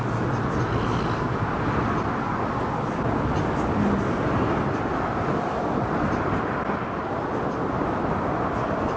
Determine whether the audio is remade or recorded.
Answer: recorded